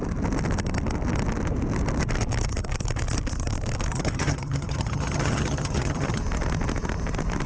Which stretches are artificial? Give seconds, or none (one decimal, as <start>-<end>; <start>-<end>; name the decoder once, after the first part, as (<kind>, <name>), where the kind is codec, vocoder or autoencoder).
3.9-6.2 (vocoder, HiFi-GAN)